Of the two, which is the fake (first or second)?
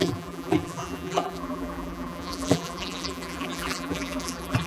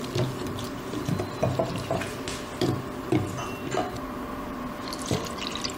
first